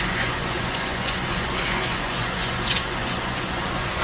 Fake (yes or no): yes